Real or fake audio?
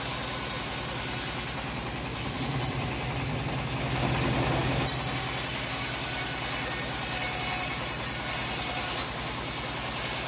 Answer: real